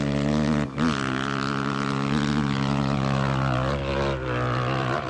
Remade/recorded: recorded